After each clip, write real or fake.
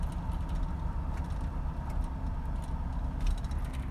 real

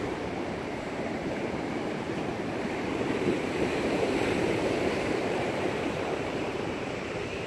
fake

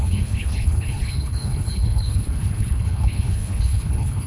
fake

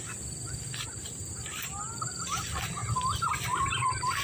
real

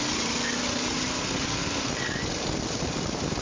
real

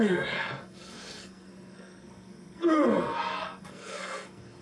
fake